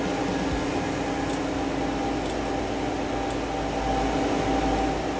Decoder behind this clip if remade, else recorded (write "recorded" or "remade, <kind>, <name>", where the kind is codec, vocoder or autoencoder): recorded